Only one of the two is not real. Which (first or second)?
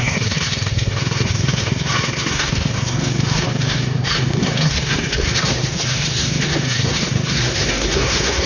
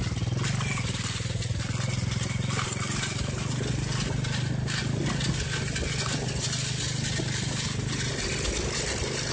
first